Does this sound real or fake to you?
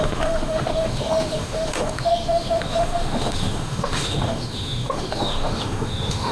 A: fake